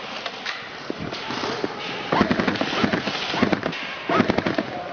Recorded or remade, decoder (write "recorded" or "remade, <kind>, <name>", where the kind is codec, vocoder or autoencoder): recorded